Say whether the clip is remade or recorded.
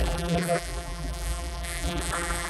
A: remade